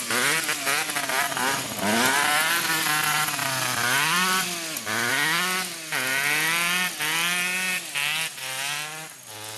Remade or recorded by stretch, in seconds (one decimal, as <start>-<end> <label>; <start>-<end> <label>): 0.0-3.4 recorded; 3.4-5.1 remade; 5.1-9.6 recorded